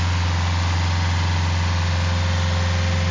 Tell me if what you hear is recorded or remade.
recorded